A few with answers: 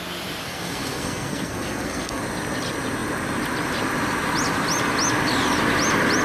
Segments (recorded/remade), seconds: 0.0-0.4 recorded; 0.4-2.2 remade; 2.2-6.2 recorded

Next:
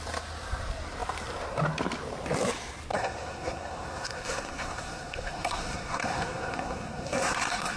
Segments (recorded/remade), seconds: 0.0-2.9 recorded; 2.9-7.8 remade

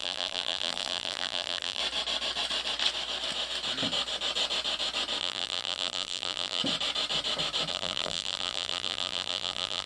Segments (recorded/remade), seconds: 0.0-1.8 remade; 1.8-5.2 recorded; 5.2-6.6 remade; 6.6-7.7 recorded; 7.7-9.9 remade